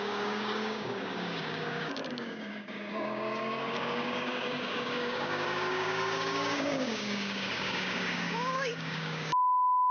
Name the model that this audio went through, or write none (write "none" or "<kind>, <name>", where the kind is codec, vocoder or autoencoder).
codec, DAC